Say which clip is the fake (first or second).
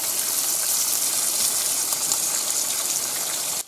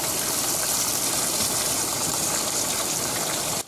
second